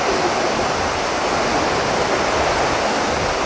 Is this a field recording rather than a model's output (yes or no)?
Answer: yes